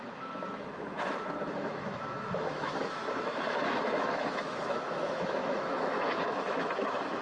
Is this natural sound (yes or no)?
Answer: no